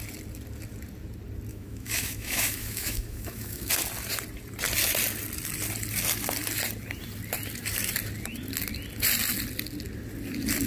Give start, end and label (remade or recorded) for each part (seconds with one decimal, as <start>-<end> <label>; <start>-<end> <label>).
0.0-1.5 recorded; 1.5-3.7 remade; 3.7-10.7 recorded